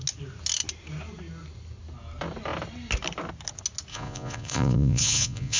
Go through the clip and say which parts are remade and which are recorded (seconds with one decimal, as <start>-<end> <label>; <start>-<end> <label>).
0.0-3.9 recorded; 3.9-5.6 remade